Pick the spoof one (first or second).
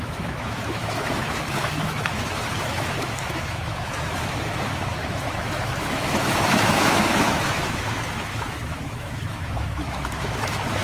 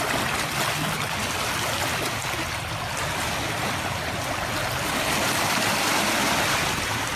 first